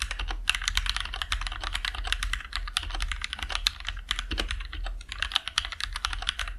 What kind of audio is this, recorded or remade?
recorded